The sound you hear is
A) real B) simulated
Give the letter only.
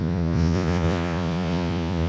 B